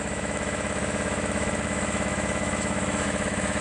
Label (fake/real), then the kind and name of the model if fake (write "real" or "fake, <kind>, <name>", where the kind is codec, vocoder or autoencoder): fake, autoencoder, DAC-VAE